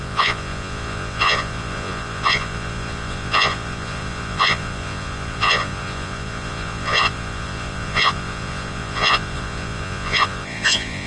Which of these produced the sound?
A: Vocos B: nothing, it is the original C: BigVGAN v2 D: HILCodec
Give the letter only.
A